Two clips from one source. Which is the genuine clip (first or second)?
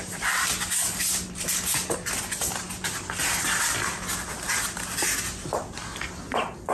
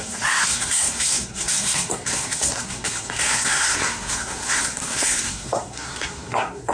first